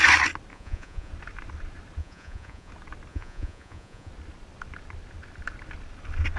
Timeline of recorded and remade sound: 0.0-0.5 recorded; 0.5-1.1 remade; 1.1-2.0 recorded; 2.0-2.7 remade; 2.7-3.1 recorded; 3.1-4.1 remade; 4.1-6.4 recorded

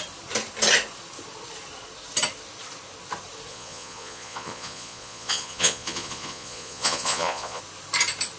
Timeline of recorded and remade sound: 0.0-3.5 recorded; 3.5-7.6 remade; 7.6-8.4 recorded

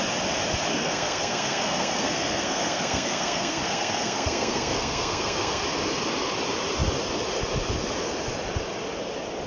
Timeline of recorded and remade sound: 0.0-0.7 recorded; 0.7-5.6 remade; 5.6-9.5 recorded

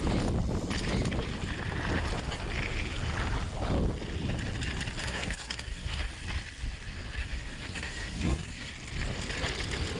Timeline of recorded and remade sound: 0.0-5.0 recorded; 5.0-6.1 remade; 6.1-7.2 recorded; 7.2-8.7 remade; 8.7-10.0 recorded

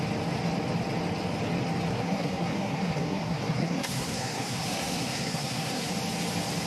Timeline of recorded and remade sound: 0.0-1.9 recorded; 1.9-5.9 remade; 5.9-6.7 recorded